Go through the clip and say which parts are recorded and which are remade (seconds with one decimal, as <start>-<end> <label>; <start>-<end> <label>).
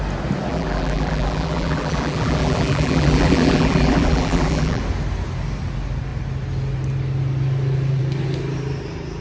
0.0-0.5 recorded; 0.5-4.8 remade; 4.8-9.2 recorded